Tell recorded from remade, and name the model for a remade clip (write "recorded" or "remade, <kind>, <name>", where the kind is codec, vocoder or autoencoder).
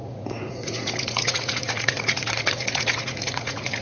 remade, vocoder, Vocos